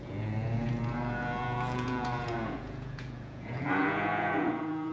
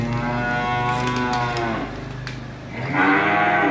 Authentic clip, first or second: second